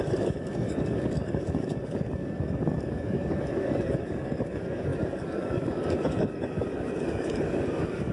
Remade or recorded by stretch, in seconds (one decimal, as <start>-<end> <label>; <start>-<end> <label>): 0.0-8.1 remade